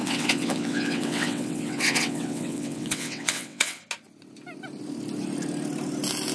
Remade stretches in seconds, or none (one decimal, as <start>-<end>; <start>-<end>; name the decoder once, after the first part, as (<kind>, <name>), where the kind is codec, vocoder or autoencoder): 0.0-3.8 (vocoder, WaveNeXt)